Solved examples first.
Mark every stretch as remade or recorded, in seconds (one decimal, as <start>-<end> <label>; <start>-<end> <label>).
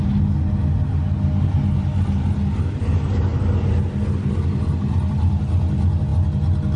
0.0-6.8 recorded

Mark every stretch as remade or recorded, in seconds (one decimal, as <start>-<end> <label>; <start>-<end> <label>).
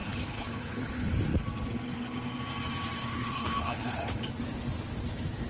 0.0-1.1 remade; 1.1-3.0 recorded; 3.0-4.3 remade; 4.3-5.5 recorded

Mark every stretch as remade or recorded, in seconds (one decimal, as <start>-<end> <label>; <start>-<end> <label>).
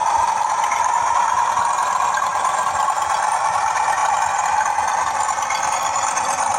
0.0-1.5 remade; 1.5-4.0 recorded; 4.0-4.9 remade; 4.9-6.6 recorded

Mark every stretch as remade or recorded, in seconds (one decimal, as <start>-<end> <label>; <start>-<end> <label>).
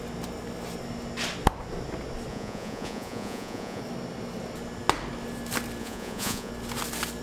0.0-2.3 recorded; 2.3-3.8 remade; 3.8-5.8 recorded; 5.8-6.5 remade; 6.5-7.2 recorded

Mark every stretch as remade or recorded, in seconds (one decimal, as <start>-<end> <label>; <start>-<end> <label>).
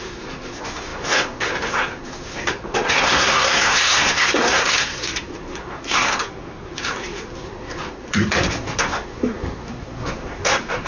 0.0-10.9 remade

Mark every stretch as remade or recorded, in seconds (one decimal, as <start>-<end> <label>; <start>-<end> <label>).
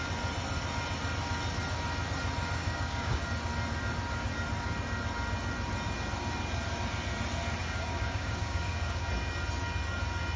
0.0-2.6 recorded; 2.6-3.2 remade; 3.2-7.6 recorded; 7.6-9.0 remade; 9.0-10.4 recorded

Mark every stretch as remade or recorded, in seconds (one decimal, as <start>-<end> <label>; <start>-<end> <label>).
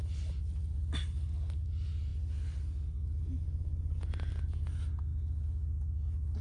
0.0-6.4 recorded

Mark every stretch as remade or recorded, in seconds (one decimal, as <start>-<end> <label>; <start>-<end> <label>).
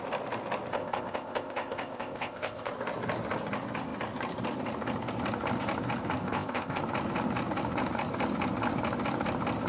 0.0-0.7 recorded; 0.7-2.7 remade; 2.7-6.2 recorded; 6.2-6.8 remade; 6.8-9.7 recorded